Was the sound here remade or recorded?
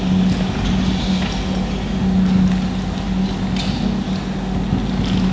recorded